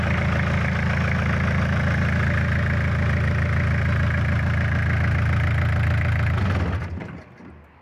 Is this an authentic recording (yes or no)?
yes